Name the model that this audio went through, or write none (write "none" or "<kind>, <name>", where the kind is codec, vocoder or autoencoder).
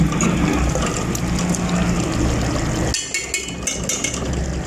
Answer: none